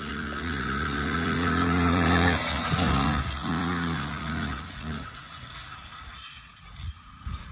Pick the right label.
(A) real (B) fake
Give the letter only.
B